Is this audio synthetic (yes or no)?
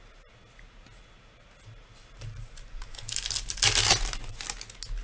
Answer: no